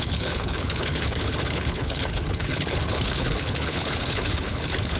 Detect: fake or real fake